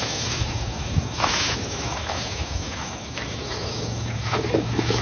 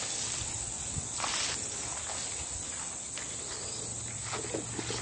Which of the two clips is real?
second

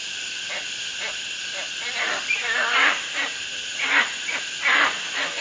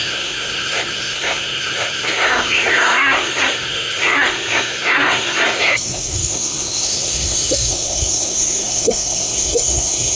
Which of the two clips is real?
first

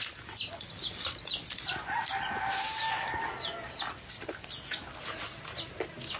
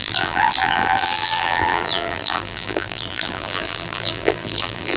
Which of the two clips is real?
first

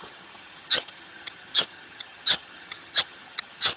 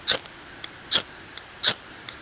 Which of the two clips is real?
second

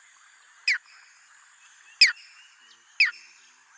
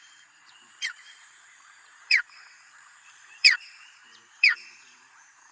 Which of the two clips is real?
first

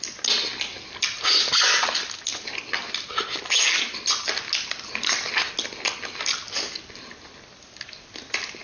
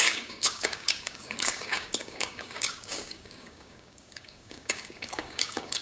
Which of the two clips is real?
first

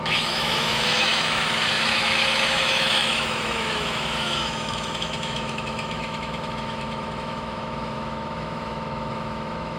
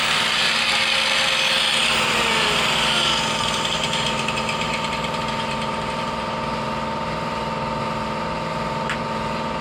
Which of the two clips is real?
second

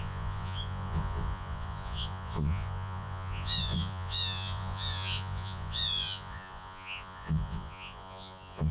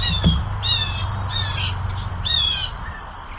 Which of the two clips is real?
second